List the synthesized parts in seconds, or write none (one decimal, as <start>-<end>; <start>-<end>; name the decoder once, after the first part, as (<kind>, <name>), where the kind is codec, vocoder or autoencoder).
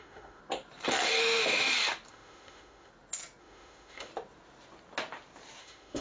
0.0-0.4 (autoencoder, DAC-VAE); 1.2-1.6; 2.1-2.9; 3.4-4.1; 5.6-6.0